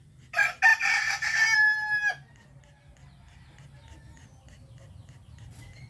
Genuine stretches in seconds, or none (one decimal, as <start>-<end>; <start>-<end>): 0.0-5.9